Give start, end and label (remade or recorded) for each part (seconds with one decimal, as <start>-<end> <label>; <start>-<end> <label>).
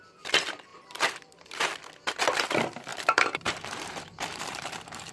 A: 0.0-0.7 recorded; 0.7-1.7 remade; 1.7-2.9 recorded; 2.9-5.1 remade